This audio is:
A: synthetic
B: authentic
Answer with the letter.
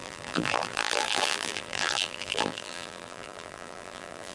A